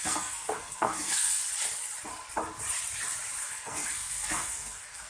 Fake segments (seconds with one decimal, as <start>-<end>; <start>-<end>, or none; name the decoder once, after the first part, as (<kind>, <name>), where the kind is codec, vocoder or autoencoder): 0.0-1.4 (codec, SNAC); 3.4-5.1